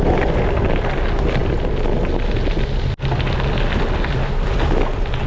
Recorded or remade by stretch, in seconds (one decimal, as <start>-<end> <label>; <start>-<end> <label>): 0.0-5.3 recorded